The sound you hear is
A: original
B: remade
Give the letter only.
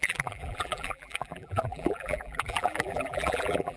B